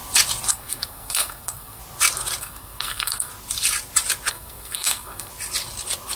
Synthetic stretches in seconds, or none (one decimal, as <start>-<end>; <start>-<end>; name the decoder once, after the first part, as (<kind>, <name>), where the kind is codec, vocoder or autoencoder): 0.5-1.8 (codec, SNAC); 2.4-3.3; 4.3-5.3